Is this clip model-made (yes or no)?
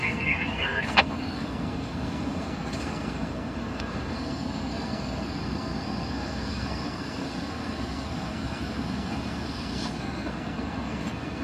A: yes